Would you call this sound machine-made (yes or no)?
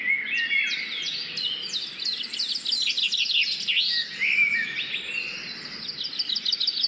no